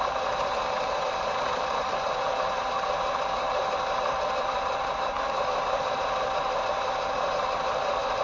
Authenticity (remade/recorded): remade